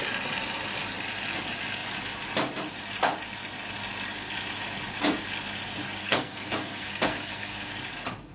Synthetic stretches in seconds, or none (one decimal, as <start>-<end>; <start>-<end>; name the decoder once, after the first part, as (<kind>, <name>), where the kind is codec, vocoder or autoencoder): 6.0-7.7 (codec, SNAC)